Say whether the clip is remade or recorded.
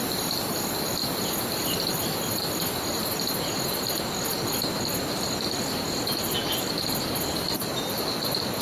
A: recorded